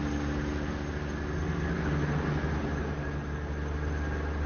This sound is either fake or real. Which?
real